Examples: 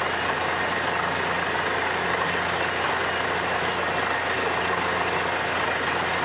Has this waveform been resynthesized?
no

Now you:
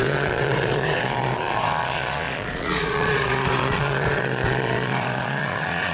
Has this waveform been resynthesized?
yes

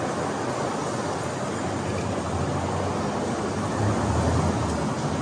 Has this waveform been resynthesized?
no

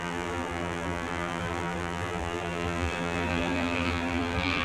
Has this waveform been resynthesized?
yes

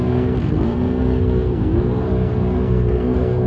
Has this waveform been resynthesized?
yes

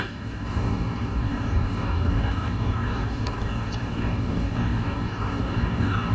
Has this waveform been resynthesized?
yes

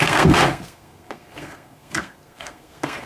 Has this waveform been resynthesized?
yes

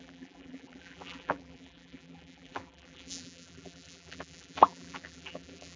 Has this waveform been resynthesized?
yes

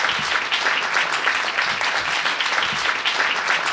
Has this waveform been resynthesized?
no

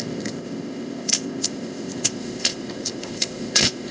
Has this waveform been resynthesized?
yes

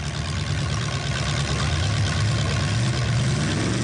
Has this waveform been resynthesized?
no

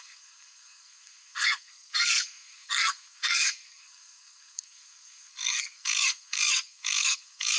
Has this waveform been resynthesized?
yes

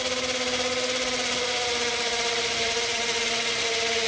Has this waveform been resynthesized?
no